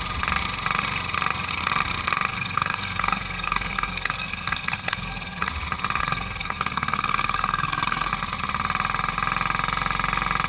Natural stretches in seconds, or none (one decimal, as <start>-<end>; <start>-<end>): 0.0-2.3; 5.5-6.0; 8.1-10.5

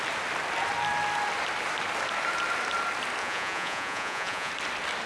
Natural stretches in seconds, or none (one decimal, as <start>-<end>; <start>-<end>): 0.0-3.2; 4.5-5.1